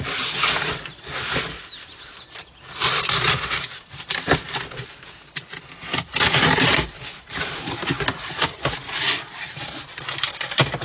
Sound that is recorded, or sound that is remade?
recorded